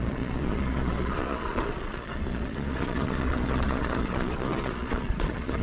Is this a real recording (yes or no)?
no